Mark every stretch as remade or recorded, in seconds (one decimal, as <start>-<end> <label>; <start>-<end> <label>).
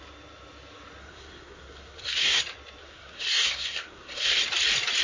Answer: 0.0-1.0 recorded; 1.0-2.4 remade; 2.4-2.8 recorded; 2.8-4.4 remade; 4.4-5.0 recorded